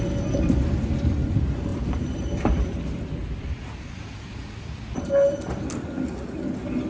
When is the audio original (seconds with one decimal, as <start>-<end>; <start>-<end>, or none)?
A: 0.0-1.7; 5.1-6.9